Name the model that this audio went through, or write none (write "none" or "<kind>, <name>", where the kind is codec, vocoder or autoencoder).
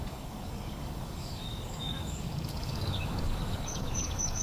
codec, DAC